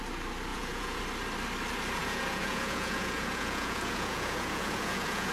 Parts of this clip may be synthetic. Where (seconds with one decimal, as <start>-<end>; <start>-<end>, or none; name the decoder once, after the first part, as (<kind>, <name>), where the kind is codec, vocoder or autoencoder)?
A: 0.5-1.0 (vocoder, Vocos); 2.0-5.3